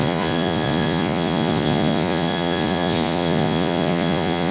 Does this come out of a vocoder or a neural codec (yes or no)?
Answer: yes